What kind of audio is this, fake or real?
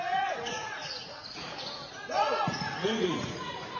fake